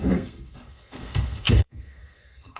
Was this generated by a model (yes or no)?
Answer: yes